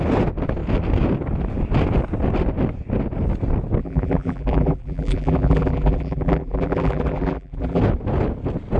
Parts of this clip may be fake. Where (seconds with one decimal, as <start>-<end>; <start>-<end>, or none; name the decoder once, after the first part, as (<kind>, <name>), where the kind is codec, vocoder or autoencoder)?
3.8-7.8 (vocoder, BigVGAN v2)

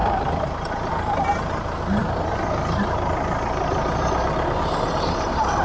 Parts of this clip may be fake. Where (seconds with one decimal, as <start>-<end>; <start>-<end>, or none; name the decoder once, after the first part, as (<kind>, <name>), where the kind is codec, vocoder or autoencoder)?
0.0-0.9 (vocoder, BigVGAN v2)

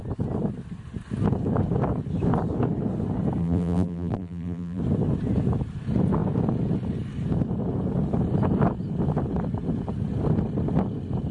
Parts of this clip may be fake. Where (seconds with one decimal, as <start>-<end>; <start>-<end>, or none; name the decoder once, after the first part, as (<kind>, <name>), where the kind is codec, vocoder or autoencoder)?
3.4-4.8 (vocoder, BigVGAN v2)

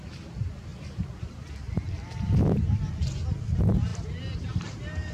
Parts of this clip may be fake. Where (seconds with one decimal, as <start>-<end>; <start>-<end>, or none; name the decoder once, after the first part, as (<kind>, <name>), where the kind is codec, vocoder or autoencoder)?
0.7-2.8 (vocoder, BigVGAN v2); 3.9-5.1

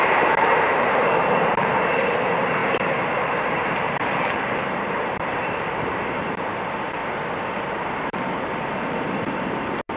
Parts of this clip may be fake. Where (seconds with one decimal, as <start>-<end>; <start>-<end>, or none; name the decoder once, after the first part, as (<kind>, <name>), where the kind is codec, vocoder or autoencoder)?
0.0-7.0 (vocoder, BigVGAN v2); 7.6-10.0